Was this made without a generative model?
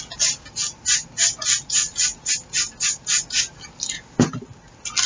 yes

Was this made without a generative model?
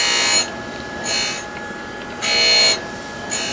yes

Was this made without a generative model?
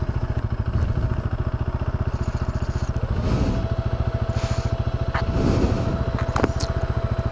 yes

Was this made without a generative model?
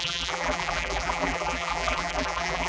no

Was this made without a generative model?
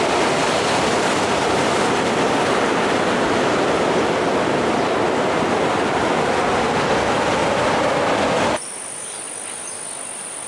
yes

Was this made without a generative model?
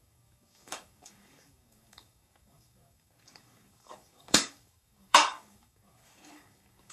no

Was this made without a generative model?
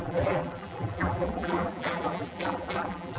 no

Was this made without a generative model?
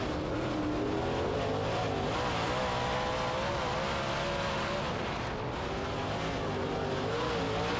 yes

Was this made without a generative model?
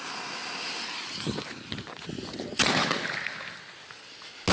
yes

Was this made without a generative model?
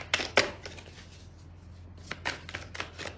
yes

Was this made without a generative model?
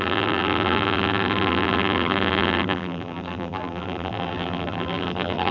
no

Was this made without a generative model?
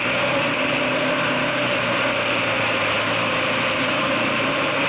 no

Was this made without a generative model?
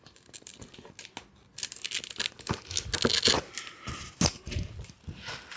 yes